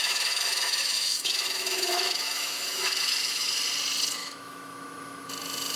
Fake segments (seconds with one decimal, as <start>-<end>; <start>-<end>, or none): 0.0-3.5; 4.2-5.3